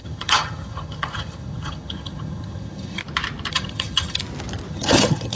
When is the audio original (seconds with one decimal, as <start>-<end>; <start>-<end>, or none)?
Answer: 3.0-3.5; 4.2-4.7